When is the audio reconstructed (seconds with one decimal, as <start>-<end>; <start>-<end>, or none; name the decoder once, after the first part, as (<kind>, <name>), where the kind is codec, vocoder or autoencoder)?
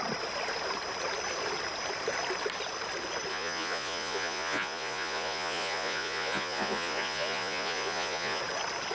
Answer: 3.3-8.4 (vocoder, Vocos)